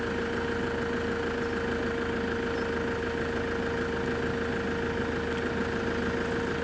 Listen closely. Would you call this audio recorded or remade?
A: recorded